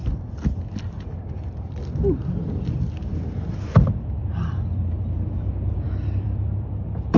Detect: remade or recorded remade